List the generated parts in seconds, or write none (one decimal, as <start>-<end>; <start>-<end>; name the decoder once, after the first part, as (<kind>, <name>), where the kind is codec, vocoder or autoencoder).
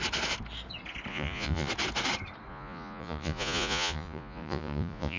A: 1.1-1.7 (vocoder, Vocos); 2.5-5.2